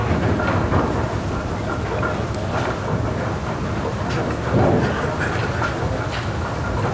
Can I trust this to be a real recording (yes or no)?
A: yes